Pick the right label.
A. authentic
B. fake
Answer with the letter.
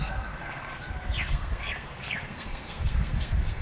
B